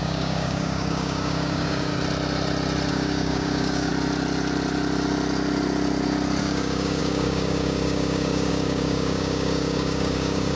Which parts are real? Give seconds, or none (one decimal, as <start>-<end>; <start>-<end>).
1.9-2.9; 3.9-6.4